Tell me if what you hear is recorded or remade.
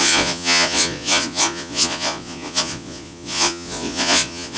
remade